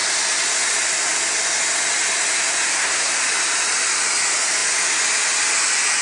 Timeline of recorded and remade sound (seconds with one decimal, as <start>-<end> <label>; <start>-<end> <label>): 0.0-2.7 recorded; 2.7-3.2 remade; 3.2-6.0 recorded